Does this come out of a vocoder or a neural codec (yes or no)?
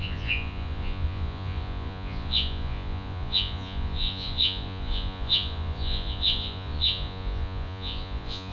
yes